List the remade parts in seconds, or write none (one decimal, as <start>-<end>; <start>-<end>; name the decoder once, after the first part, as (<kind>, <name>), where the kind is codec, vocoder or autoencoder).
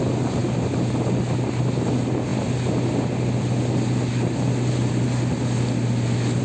none